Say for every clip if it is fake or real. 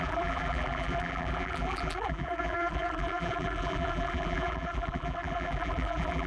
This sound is fake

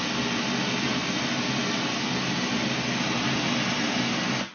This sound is real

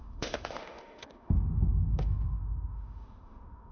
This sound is fake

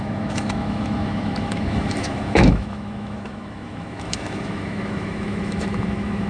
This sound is fake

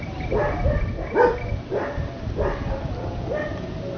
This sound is real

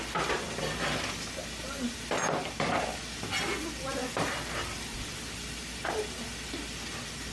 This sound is real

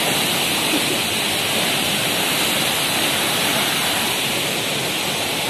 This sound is real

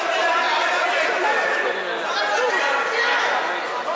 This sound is real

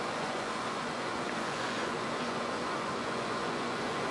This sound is fake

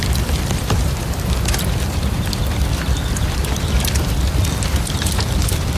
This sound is fake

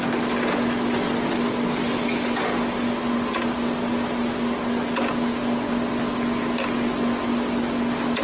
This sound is real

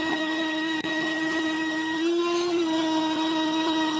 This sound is fake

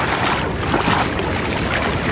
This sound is real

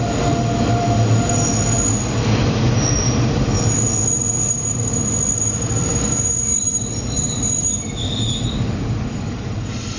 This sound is real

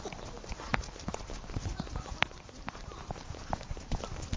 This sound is real